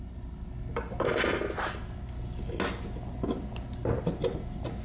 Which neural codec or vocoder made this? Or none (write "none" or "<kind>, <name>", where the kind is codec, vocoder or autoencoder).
none